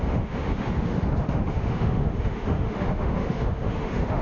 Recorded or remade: remade